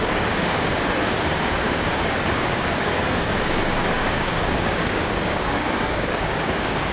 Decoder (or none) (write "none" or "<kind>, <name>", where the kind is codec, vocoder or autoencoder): codec, DAC